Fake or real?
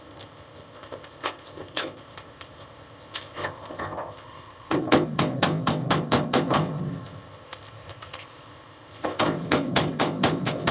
fake